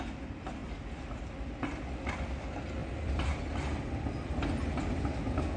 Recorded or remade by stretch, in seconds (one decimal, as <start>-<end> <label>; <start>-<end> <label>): 0.0-5.6 recorded